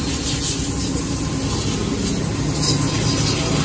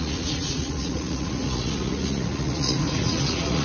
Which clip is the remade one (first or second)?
second